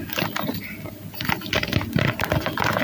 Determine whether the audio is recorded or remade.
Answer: recorded